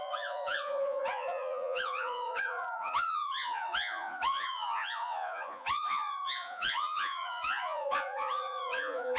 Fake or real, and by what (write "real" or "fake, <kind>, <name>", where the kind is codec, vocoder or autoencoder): fake, vocoder, Vocos